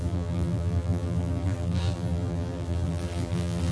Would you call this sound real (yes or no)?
no